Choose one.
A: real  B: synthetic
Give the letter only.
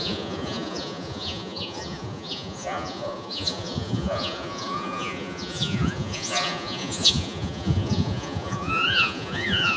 B